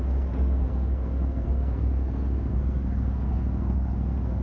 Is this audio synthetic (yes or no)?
yes